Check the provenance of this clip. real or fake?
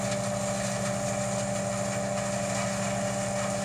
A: real